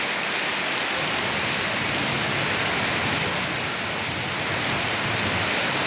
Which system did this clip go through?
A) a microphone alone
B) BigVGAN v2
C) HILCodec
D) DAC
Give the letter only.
A